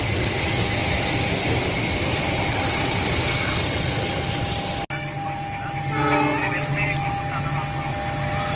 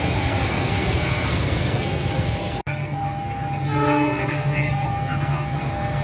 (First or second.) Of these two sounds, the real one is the first